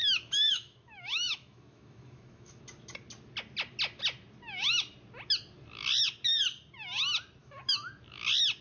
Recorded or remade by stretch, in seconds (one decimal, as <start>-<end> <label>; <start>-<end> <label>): 0.0-2.6 remade; 2.6-7.4 recorded; 7.4-7.9 remade; 7.9-8.6 recorded